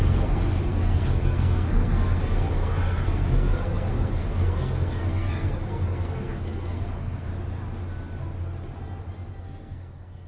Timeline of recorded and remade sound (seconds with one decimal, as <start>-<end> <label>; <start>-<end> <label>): 0.0-7.3 remade; 7.3-9.4 recorded; 9.4-10.3 remade